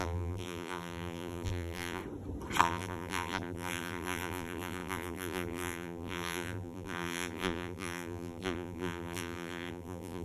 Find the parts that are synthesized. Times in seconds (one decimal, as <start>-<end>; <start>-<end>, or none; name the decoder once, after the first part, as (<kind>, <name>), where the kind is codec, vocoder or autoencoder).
0.0-2.0 (vocoder, BigVGAN v2); 2.6-10.2